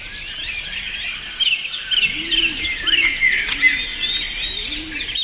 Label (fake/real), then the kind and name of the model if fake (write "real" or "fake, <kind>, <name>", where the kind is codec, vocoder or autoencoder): real